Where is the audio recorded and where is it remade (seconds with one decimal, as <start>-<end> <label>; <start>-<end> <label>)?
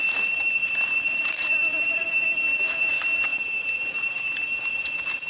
0.0-0.6 recorded; 0.6-2.1 remade; 2.1-3.3 recorded; 3.3-4.4 remade; 4.4-5.3 recorded